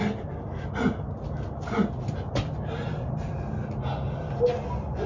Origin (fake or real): real